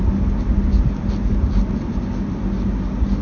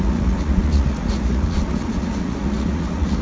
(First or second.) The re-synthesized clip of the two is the second